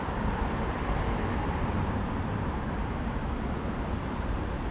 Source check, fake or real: fake